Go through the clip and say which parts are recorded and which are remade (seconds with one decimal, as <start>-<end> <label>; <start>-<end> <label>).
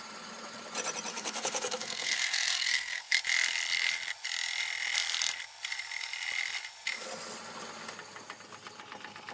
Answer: 0.0-1.1 recorded; 1.1-3.2 remade; 3.2-9.3 recorded